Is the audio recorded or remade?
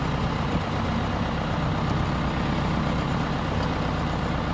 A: recorded